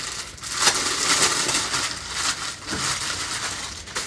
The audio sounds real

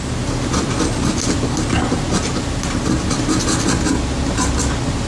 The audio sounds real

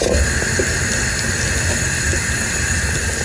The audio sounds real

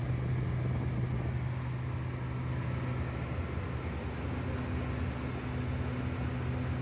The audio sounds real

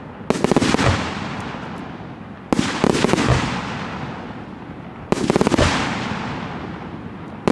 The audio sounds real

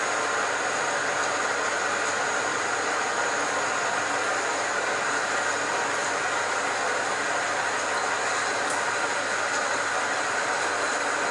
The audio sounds real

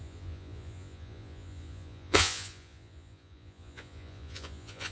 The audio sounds fake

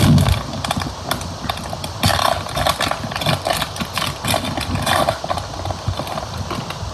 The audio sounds real